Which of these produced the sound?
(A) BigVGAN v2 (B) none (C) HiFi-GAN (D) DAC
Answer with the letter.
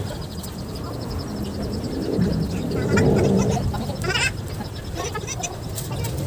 B